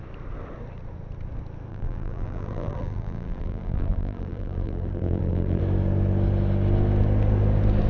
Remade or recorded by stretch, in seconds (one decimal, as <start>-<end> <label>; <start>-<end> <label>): 0.0-1.7 recorded; 1.7-5.6 remade; 5.6-7.9 recorded